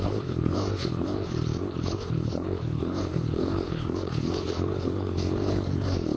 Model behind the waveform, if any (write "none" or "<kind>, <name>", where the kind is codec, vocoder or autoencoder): codec, HILCodec